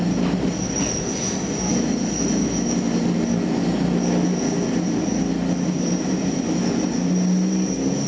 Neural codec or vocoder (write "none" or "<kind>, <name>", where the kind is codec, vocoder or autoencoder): none